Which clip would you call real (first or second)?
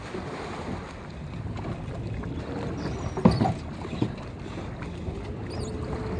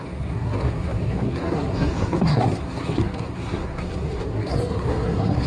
first